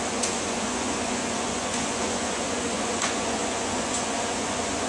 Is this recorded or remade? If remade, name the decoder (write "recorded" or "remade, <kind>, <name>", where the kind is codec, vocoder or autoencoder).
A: remade, vocoder, Vocos